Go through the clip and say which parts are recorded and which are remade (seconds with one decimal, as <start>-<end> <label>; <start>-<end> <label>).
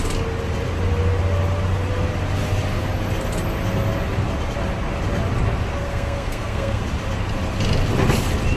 0.0-5.8 recorded; 5.8-6.8 remade; 6.8-8.6 recorded